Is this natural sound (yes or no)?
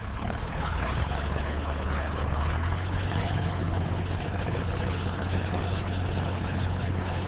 no